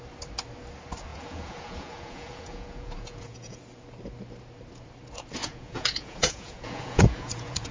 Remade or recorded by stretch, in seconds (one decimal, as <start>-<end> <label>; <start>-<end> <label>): 0.0-1.1 recorded; 1.1-3.6 remade; 3.6-5.4 recorded; 5.4-7.7 remade